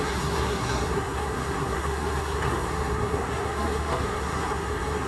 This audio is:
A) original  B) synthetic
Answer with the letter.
B